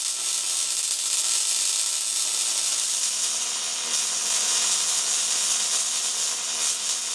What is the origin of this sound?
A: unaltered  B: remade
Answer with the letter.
A